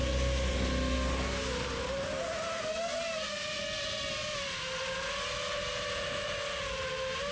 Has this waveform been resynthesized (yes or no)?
no